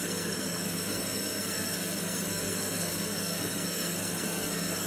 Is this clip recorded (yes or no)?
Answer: no